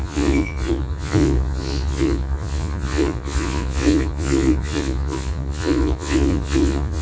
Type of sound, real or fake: fake